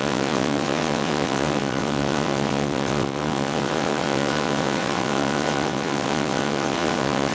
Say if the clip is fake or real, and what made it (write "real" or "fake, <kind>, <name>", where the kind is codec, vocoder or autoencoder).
fake, vocoder, WaveNeXt